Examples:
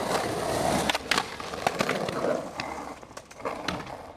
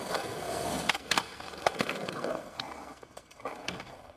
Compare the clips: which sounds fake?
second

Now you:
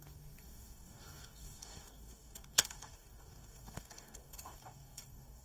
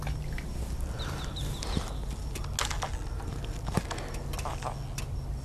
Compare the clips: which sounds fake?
first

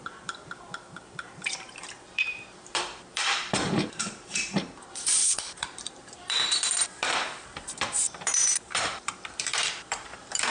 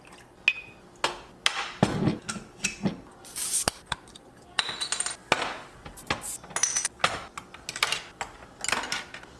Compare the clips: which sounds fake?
first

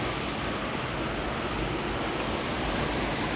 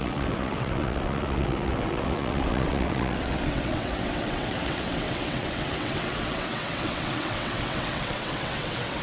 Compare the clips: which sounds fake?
second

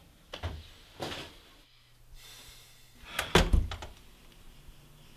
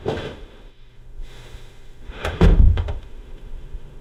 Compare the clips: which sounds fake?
second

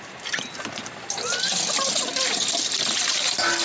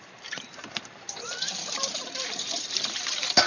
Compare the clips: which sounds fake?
second